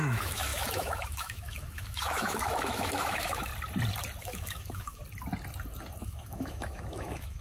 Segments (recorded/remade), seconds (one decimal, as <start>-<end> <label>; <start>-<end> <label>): 0.0-3.5 remade; 3.5-4.2 recorded; 4.2-5.0 remade; 5.0-6.0 recorded; 6.0-7.4 remade

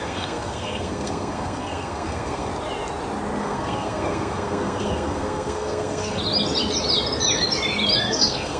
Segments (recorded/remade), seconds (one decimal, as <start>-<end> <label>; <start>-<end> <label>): 0.0-2.5 remade; 2.5-3.4 recorded; 3.4-6.2 remade; 6.2-8.0 recorded; 8.0-8.6 remade

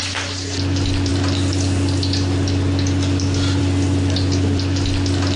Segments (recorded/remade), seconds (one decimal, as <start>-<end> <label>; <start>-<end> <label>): 0.0-5.4 recorded

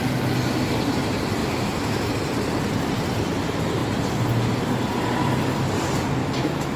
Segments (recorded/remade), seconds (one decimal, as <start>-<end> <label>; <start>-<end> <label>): 0.0-1.4 recorded; 1.4-2.1 remade; 2.1-6.2 recorded; 6.2-6.8 remade

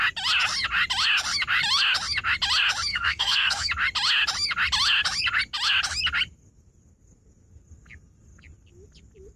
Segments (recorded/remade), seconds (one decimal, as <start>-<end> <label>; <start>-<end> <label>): 0.0-2.9 recorded; 2.9-3.7 remade; 3.7-9.4 recorded

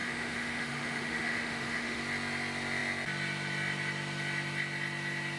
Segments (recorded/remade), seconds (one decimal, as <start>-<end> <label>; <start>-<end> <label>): 0.0-2.0 remade; 2.0-5.4 recorded

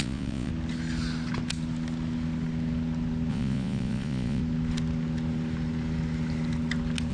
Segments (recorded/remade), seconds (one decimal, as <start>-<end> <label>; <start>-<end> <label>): 0.0-0.5 remade; 0.5-3.3 recorded; 3.3-4.4 remade; 4.4-7.1 recorded

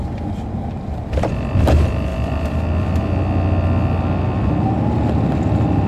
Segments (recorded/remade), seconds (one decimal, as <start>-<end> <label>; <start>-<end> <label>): 0.0-2.1 recorded; 2.1-3.0 remade; 3.0-5.9 recorded